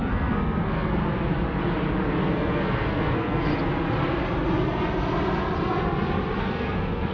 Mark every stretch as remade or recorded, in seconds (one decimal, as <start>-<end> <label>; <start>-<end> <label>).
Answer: 0.0-1.0 remade; 1.0-2.2 recorded; 2.2-3.5 remade; 3.5-6.4 recorded; 6.4-7.1 remade